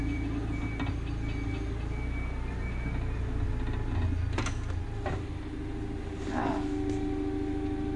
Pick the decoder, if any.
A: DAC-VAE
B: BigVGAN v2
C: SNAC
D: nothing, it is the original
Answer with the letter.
D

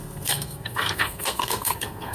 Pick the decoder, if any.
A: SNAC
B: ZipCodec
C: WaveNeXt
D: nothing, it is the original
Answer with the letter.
A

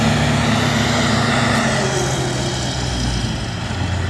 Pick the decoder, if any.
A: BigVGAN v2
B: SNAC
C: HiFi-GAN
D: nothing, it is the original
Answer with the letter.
D